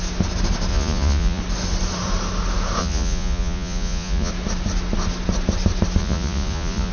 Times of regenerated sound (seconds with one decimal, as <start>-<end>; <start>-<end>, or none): 0.7-1.4; 2.8-4.3; 6.0-6.9

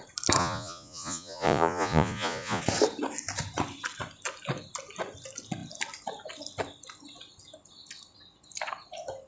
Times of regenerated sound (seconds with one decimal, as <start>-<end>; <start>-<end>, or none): 0.4-2.6